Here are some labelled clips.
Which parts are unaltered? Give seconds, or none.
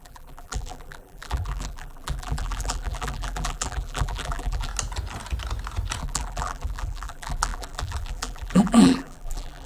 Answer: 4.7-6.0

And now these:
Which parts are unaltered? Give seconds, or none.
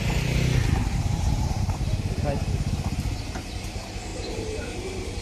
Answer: 0.0-0.8; 2.2-4.1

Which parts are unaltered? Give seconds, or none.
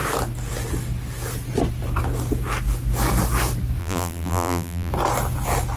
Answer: 0.0-3.8; 4.9-5.8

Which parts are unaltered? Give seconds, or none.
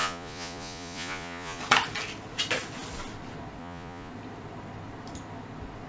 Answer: 1.6-3.6; 4.1-5.9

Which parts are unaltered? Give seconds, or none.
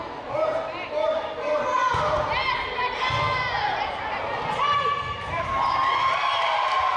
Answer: 0.0-7.0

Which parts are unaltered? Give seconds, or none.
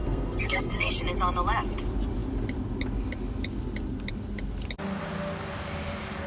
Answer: 0.9-6.3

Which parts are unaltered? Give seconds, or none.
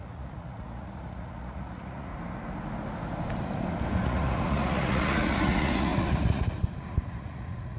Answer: 2.1-3.9